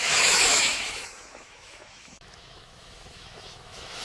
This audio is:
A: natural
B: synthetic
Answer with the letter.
B